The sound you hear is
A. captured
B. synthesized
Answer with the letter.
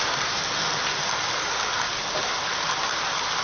A